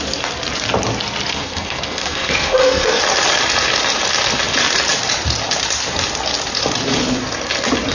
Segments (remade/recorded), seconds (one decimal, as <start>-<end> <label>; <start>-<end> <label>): 0.0-1.3 recorded; 1.3-3.0 remade; 3.0-7.9 recorded